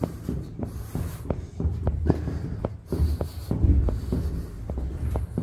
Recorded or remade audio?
recorded